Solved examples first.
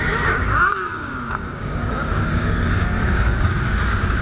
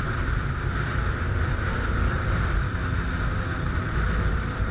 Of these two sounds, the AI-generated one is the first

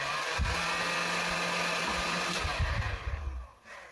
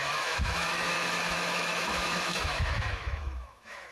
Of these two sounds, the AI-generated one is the second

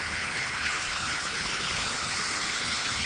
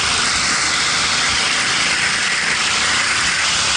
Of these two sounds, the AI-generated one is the first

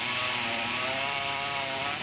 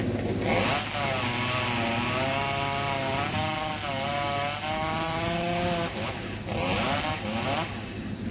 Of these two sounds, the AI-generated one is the first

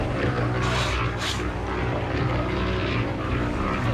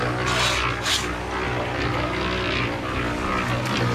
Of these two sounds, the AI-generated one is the first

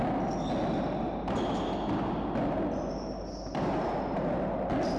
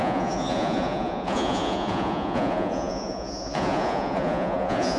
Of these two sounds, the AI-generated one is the second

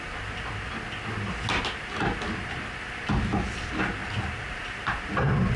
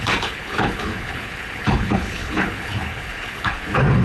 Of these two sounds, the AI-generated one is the second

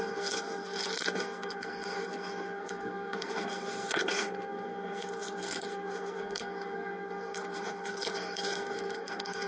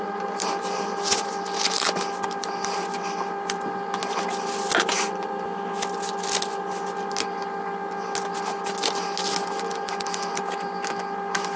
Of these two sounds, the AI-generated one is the first